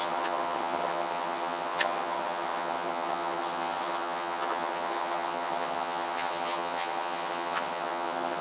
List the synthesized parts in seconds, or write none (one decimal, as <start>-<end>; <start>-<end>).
0.0-8.4